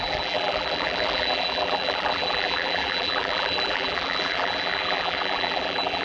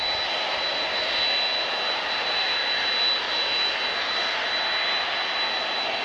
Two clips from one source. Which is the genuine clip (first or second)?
second